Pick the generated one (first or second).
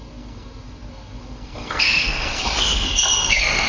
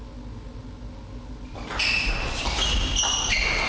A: first